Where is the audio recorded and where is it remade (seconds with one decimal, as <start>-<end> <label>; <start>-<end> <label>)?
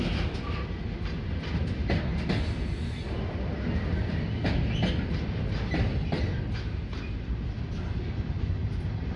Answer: 0.0-9.2 recorded